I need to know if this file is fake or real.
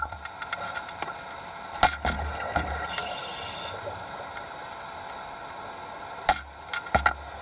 real